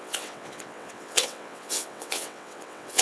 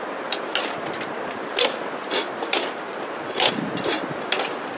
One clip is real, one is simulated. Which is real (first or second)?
second